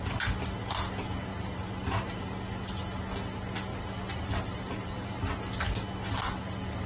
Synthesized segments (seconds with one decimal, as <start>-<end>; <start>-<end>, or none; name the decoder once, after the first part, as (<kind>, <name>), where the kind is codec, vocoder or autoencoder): 1.3-2.2 (vocoder, BigVGAN v2); 3.7-5.2